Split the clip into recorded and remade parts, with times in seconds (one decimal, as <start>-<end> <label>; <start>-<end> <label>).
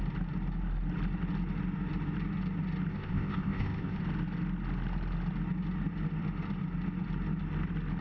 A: 0.0-2.9 recorded; 2.9-4.0 remade; 4.0-8.0 recorded